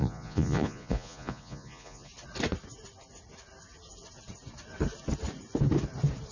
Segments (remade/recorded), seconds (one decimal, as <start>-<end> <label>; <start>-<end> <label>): 0.0-2.1 remade; 2.1-6.3 recorded